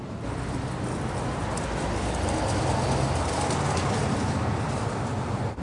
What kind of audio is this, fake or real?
real